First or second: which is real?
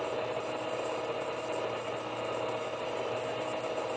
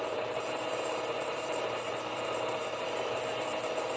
first